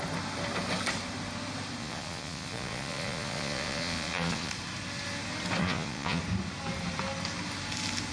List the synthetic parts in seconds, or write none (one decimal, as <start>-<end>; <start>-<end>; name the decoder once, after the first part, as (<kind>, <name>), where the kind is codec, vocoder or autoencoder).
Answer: 1.8-4.5 (vocoder, Vocos); 5.6-6.2